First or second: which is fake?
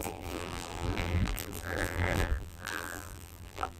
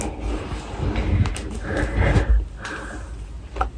first